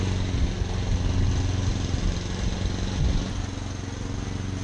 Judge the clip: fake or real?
real